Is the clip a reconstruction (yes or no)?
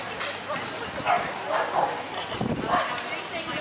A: no